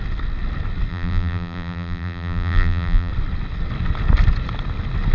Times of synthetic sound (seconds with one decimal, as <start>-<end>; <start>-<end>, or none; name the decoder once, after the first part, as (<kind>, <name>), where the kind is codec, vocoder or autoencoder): 0.9-3.1 (vocoder, BigVGAN v2)

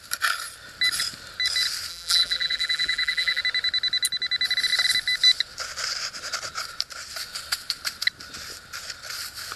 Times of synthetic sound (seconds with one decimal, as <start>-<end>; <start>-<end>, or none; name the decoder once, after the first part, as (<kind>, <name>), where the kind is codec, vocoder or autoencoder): 1.9-3.4 (vocoder, BigVGAN v2)

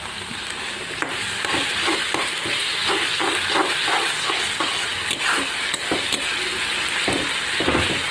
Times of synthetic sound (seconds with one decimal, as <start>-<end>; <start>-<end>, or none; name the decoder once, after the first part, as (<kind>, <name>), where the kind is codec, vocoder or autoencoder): 0.0-2.7 (vocoder, BigVGAN v2); 7.6-8.1

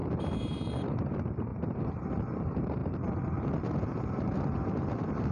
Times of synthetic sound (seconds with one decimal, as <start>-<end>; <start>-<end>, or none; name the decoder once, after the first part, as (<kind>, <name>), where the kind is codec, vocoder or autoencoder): 0.7-5.3 (vocoder, BigVGAN v2)

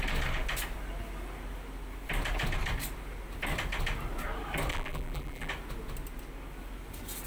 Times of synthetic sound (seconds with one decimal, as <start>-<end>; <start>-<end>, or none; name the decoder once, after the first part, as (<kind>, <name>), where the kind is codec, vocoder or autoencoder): 4.7-5.5 (vocoder, BigVGAN v2)

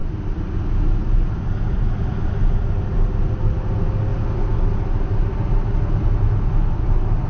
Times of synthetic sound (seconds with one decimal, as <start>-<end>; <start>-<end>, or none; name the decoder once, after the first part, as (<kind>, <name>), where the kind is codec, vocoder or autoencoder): none

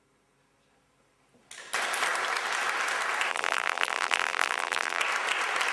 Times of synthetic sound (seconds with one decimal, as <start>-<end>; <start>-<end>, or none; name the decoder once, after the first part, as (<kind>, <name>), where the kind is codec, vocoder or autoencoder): 3.3-5.0 (vocoder, BigVGAN v2)

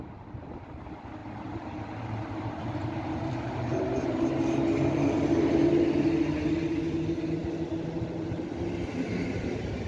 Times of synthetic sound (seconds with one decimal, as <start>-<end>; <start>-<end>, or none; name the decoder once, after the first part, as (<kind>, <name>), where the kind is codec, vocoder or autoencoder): 1.2-4.1 (vocoder, BigVGAN v2)